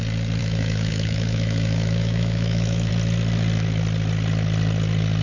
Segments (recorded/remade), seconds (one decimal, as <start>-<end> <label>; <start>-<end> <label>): 0.0-0.4 recorded; 0.4-2.9 remade; 2.9-5.2 recorded